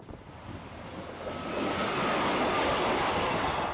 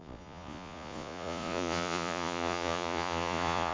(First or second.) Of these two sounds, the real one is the first